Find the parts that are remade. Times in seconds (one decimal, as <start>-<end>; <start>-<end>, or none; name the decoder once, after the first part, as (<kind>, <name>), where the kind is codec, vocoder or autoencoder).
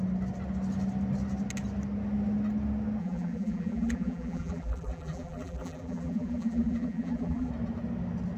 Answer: 3.0-7.5 (vocoder, BigVGAN v2)